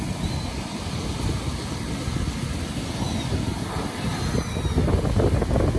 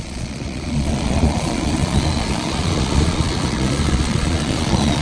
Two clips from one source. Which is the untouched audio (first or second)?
first